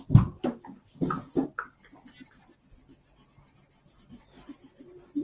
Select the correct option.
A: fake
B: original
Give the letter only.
B